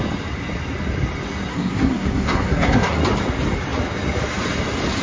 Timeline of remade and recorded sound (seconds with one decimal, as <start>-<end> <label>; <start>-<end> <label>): 0.0-1.5 recorded; 1.5-3.0 remade; 3.0-5.0 recorded